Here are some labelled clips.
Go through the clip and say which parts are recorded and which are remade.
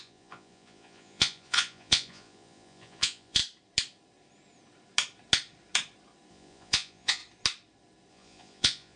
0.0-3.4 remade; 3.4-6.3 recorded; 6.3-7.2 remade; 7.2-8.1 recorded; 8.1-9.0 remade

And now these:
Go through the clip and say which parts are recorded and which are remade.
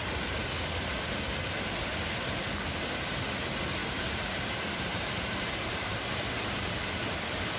0.0-3.8 recorded; 3.8-6.7 remade; 6.7-7.6 recorded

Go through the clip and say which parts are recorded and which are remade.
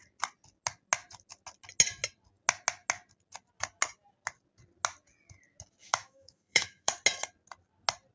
0.0-5.8 recorded; 5.8-6.9 remade; 6.9-8.1 recorded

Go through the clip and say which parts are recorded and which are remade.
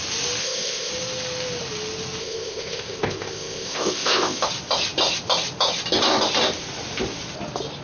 0.0-0.4 recorded; 0.4-0.9 remade; 0.9-2.2 recorded; 2.2-4.4 remade; 4.4-7.8 recorded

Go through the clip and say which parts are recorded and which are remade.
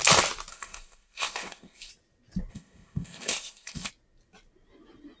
0.0-0.5 recorded; 0.5-1.9 remade; 1.9-2.5 recorded; 2.5-3.9 remade; 3.9-5.2 recorded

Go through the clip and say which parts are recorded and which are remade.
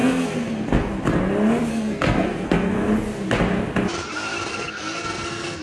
0.0-0.9 remade; 0.9-1.7 recorded; 1.7-2.9 remade; 2.9-4.5 recorded; 4.5-5.6 remade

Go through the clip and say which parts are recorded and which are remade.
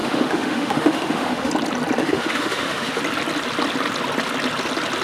0.0-1.5 remade; 1.5-2.0 recorded; 2.0-3.0 remade; 3.0-5.0 recorded